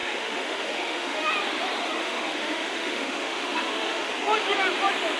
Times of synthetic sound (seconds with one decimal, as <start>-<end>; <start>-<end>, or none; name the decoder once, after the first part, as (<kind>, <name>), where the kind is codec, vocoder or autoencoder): 0.0-1.3 (autoencoder, DAC-VAE); 2.0-4.1

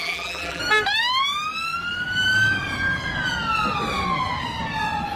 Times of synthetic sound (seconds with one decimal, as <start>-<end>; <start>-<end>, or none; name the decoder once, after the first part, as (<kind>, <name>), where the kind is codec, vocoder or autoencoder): 0.0-0.6 (vocoder, BigVGAN v2)

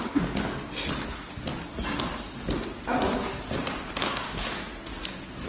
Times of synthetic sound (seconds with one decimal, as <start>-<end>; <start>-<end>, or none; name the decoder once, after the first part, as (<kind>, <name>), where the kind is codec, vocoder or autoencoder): 4.0-4.6 (codec, DAC)

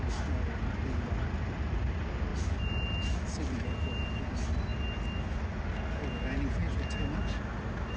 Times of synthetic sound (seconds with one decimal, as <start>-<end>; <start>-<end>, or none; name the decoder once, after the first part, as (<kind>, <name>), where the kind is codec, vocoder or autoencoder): 2.3-4.2 (vocoder, BigVGAN v2)

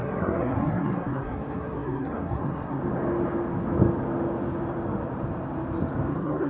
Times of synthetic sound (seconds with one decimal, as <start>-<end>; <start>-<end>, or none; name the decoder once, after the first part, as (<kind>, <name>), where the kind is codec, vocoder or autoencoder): 0.0-2.8 (codec, SNAC); 6.1-6.5

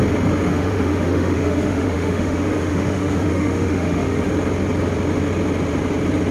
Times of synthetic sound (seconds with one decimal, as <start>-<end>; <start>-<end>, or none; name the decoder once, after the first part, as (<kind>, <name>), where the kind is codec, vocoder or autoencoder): 0.5-4.3 (autoencoder, DAC-VAE)